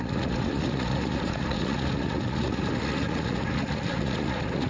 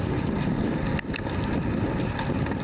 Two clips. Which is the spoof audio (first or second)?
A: first